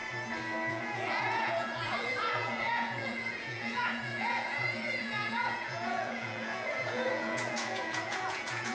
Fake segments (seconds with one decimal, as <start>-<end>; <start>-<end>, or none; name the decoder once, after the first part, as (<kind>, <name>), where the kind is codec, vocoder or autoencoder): 0.7-8.7 (vocoder, Vocos)

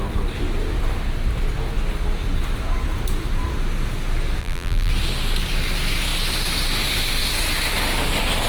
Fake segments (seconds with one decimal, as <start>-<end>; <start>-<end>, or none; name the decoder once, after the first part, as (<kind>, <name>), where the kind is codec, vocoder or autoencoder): 4.4-4.9 (vocoder, BigVGAN v2)

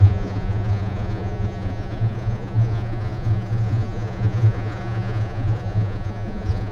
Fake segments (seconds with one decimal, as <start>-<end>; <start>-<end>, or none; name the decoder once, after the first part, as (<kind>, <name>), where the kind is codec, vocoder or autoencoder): 0.0-6.7 (vocoder, Vocos)

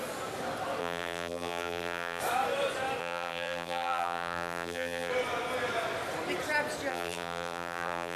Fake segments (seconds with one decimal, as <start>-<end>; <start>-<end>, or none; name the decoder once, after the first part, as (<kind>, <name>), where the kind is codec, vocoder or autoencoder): 0.8-2.2 (vocoder, BigVGAN v2); 3.0-5.1; 6.9-8.2